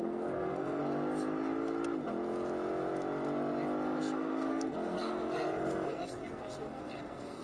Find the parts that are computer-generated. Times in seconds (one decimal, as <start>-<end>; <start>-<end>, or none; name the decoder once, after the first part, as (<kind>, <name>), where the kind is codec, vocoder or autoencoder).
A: 0.0-0.8 (codec, SNAC); 4.0-7.4